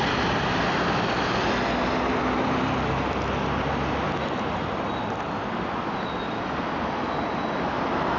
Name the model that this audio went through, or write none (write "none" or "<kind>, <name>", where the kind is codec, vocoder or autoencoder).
none